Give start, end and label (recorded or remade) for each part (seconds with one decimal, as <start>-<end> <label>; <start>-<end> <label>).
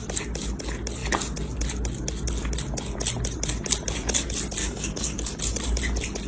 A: 0.0-4.6 recorded; 4.6-5.4 remade; 5.4-6.3 recorded